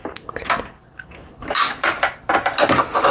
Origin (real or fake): real